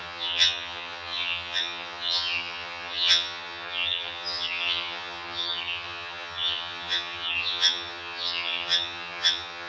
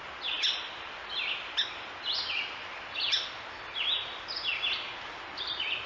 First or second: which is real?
second